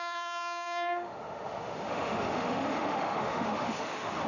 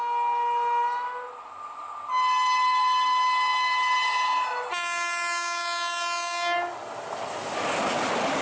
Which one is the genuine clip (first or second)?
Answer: second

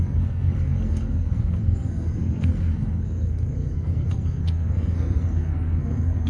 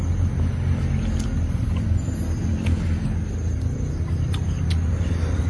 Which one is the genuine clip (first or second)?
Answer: second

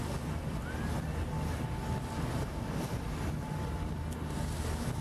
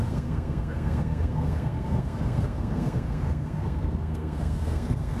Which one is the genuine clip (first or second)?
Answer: first